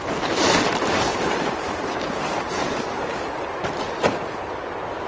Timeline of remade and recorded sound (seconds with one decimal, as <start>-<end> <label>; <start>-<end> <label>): 0.0-1.1 recorded; 1.1-4.2 remade; 4.2-5.1 recorded